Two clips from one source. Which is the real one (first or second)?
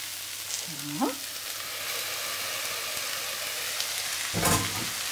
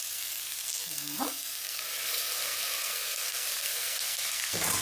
first